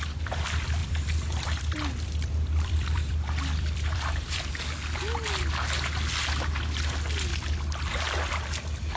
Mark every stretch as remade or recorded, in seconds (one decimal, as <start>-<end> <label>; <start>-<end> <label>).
0.0-0.8 recorded; 0.8-4.5 remade; 4.5-9.0 recorded